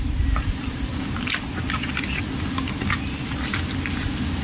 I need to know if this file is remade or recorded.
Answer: recorded